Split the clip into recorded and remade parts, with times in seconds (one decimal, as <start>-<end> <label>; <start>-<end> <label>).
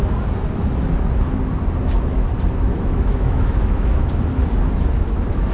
0.0-2.7 recorded; 2.7-4.1 remade; 4.1-5.5 recorded